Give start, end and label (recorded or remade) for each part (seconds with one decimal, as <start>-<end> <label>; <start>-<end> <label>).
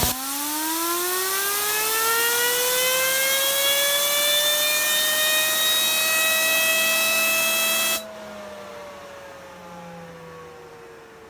0.0-11.3 recorded